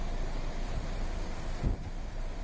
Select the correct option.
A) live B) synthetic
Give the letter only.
B